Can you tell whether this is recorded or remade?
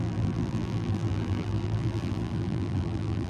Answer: remade